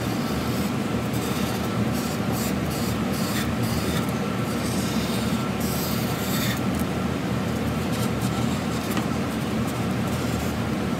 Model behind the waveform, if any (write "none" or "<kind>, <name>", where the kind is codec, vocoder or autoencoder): vocoder, BigVGAN v2